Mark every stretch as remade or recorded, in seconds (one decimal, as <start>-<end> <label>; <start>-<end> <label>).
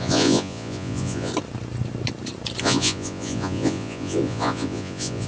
0.0-1.3 remade; 1.3-2.6 recorded; 2.6-5.3 remade